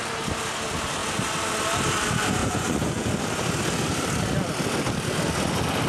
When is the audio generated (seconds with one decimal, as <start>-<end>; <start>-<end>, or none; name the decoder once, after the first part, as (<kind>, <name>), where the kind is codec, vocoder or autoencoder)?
2.4-3.1 (vocoder, Vocos)